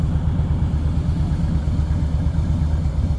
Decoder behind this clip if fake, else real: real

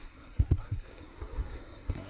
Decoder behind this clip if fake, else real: fake, codec, SNAC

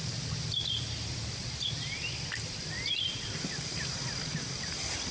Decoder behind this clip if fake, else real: real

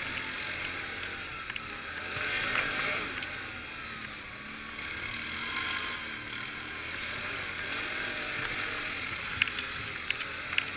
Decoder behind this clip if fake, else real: real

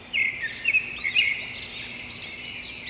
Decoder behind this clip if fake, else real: fake, vocoder, BigVGAN v2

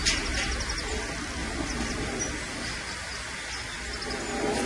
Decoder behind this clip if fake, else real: real